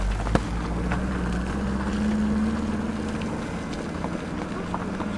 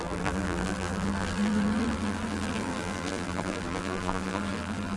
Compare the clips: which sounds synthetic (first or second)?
second